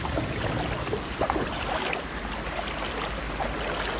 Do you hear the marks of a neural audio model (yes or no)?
no